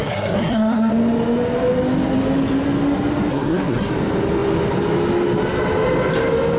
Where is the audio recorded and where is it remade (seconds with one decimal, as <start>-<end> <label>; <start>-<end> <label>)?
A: 0.0-0.9 remade; 0.9-3.3 recorded; 3.3-3.9 remade; 3.9-6.6 recorded